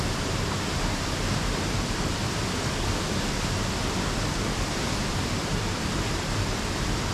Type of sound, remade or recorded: remade